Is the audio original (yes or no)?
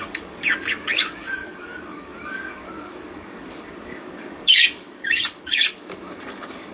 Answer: no